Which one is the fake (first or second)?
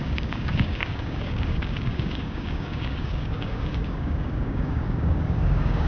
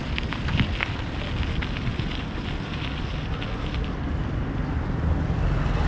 first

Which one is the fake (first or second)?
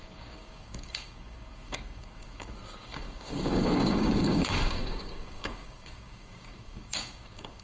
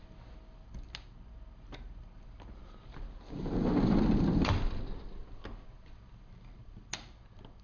first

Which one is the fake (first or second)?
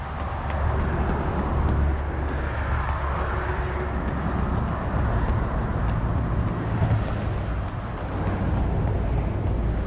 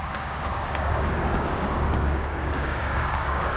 second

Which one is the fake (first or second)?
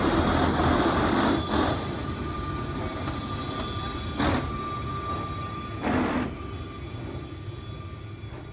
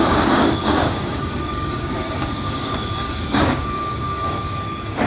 second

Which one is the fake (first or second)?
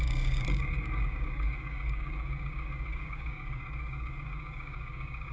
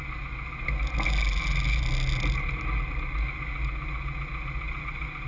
first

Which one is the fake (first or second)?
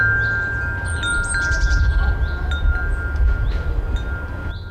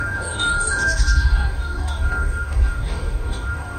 second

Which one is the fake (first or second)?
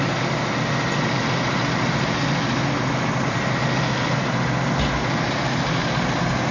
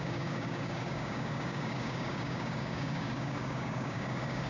second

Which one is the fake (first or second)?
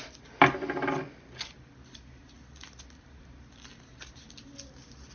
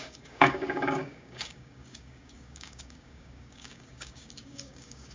second